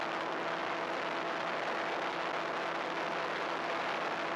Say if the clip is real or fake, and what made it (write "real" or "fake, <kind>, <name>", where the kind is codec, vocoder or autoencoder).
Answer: real